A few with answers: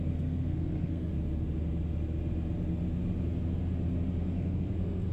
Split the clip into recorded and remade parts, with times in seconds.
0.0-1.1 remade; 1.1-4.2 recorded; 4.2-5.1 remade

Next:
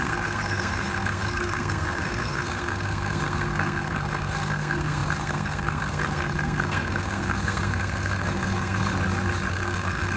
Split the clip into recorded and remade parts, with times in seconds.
0.0-8.8 remade; 8.8-9.5 recorded; 9.5-10.2 remade

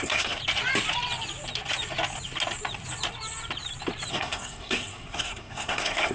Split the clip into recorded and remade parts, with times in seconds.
0.0-0.4 remade; 0.4-4.1 recorded; 4.1-6.1 remade

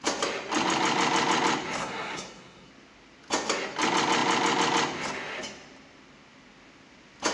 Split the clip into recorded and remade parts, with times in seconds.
0.0-1.8 recorded; 1.8-2.7 remade; 2.7-7.3 recorded